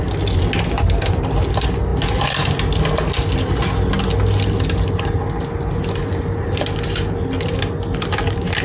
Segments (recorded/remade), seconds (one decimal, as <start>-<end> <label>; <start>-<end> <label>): 0.0-8.6 recorded